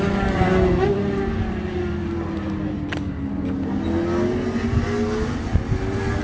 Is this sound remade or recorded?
recorded